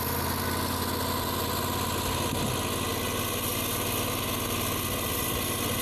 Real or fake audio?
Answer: real